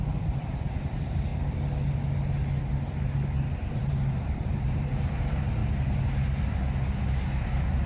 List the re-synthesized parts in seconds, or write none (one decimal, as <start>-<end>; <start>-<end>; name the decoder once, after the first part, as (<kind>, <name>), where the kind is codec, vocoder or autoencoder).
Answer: 0.0-1.3 (vocoder, BigVGAN v2); 3.7-5.6